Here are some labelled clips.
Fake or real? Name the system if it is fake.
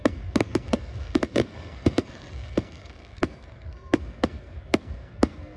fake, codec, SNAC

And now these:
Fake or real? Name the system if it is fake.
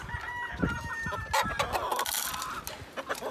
real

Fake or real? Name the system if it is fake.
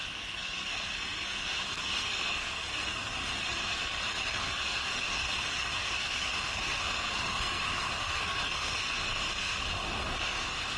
fake, codec, SNAC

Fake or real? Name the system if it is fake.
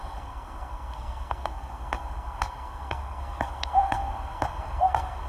fake, codec, SNAC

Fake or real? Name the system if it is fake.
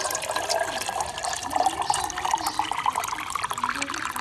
real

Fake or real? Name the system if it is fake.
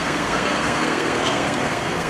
fake, codec, SNAC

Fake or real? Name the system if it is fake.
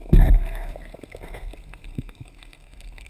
fake, codec, SNAC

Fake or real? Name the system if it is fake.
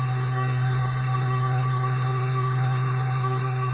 fake, codec, SNAC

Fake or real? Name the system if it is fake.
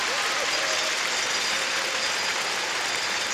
real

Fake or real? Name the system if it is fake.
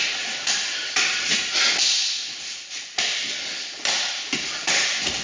real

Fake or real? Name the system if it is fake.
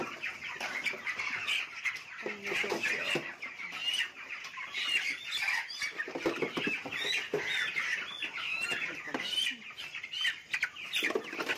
real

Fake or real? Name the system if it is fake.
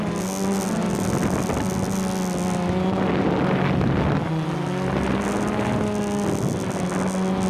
real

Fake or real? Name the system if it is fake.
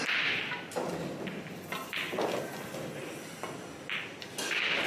real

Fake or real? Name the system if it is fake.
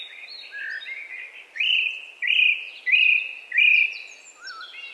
real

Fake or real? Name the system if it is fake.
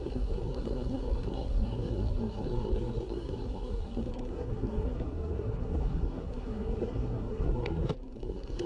fake, codec, SNAC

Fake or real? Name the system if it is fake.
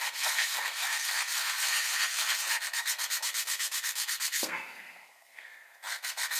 fake, codec, SNAC